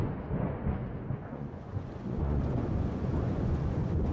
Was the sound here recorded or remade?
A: remade